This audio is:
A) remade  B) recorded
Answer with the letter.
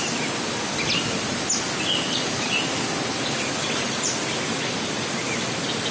B